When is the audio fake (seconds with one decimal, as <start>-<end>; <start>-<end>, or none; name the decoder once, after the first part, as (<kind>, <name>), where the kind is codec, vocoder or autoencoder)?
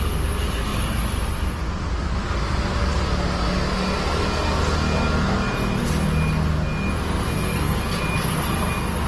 7.3-8.0 (codec, SNAC)